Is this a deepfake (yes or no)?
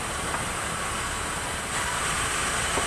no